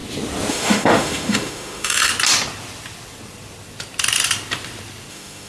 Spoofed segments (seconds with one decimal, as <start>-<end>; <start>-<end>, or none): 0.5-2.1; 5.1-5.5